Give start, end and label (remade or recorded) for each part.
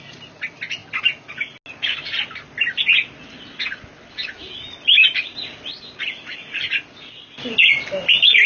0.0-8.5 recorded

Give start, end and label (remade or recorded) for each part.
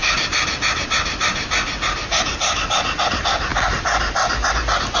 0.0-5.0 recorded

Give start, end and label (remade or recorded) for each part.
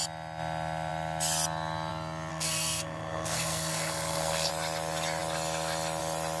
0.0-2.3 recorded; 2.3-4.5 remade; 4.5-6.4 recorded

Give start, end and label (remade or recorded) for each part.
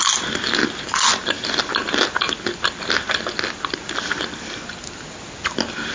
0.0-5.9 recorded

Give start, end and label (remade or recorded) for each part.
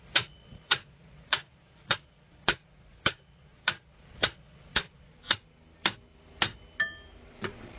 0.0-5.1 remade; 5.1-7.3 recorded; 7.3-7.8 remade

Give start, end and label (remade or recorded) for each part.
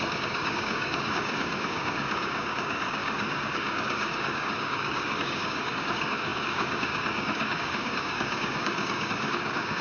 0.0-9.8 remade